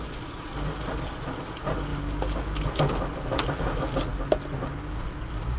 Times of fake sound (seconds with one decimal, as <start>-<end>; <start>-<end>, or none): none